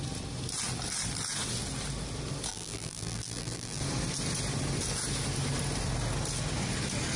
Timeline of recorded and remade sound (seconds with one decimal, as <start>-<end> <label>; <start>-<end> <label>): 0.0-2.5 recorded; 2.5-3.8 remade; 3.8-7.2 recorded

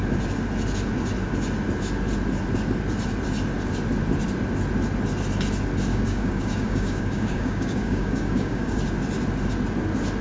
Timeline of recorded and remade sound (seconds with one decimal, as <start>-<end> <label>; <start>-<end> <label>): 0.0-5.9 recorded; 5.9-8.8 remade; 8.8-10.2 recorded